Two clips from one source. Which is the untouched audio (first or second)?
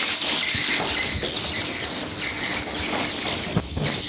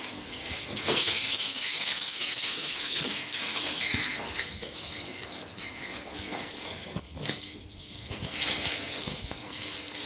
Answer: first